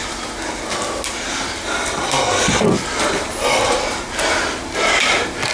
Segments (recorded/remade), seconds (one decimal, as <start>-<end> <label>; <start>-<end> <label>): 0.0-5.5 recorded